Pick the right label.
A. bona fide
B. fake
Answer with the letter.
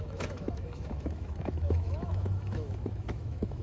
B